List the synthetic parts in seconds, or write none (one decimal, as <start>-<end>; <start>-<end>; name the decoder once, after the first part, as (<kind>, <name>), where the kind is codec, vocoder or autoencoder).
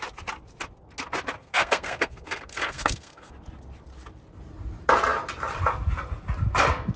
1.4-3.3 (codec, SNAC)